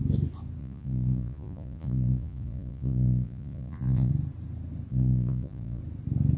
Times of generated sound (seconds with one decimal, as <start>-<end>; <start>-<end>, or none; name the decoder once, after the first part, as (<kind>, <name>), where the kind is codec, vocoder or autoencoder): 0.6-4.1 (vocoder, Vocos); 4.9-5.8